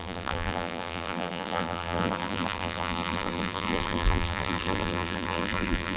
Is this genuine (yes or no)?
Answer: no